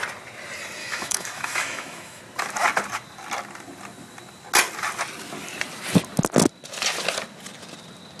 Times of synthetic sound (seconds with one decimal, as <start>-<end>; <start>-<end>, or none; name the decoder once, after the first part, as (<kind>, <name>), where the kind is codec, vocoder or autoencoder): 0.8-2.2 (autoencoder, DAC-VAE)